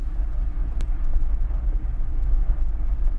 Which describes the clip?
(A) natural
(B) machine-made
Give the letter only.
A